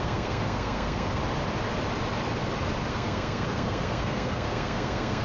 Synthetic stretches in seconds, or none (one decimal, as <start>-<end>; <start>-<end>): 0.0-1.2; 2.9-5.2